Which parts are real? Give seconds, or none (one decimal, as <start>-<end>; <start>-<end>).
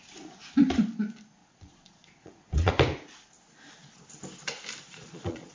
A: 0.0-1.4; 2.7-4.8